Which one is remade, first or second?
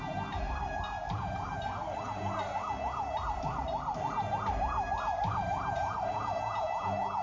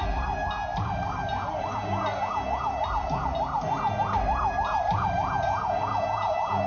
first